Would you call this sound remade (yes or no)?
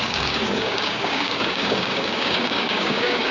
yes